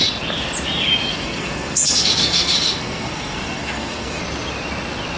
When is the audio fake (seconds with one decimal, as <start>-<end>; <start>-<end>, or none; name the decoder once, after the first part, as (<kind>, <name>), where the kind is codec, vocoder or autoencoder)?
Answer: 1.1-4.2 (codec, SNAC)